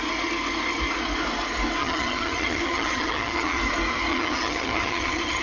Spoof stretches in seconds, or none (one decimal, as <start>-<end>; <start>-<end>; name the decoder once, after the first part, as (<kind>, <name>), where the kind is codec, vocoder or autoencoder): 1.8-3.6 (vocoder, HiFi-GAN); 4.1-5.4